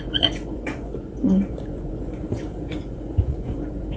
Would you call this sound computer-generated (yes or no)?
yes